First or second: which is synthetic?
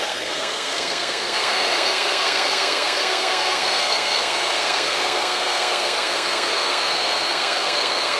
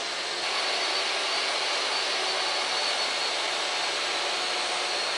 first